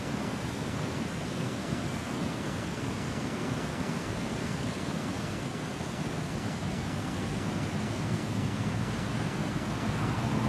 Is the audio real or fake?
fake